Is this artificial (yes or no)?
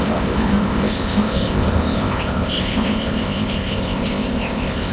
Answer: yes